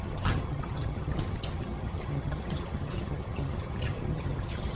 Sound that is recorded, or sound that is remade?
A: remade